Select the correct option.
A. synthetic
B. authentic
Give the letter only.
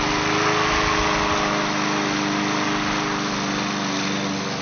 B